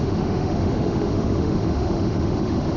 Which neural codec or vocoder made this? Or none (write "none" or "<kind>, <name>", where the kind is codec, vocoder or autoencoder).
autoencoder, DAC-VAE